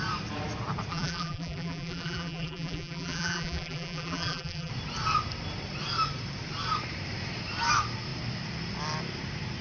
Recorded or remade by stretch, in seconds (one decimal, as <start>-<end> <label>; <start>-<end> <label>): 0.0-0.9 recorded; 0.9-4.7 remade; 4.7-9.6 recorded